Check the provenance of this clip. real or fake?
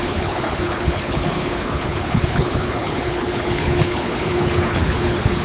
fake